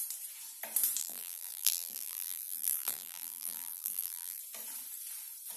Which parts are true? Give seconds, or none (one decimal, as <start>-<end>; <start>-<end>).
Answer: 0.0-1.0; 4.4-5.6